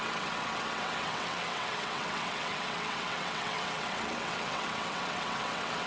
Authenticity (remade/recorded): remade